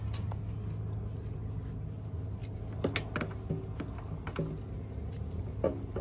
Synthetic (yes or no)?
no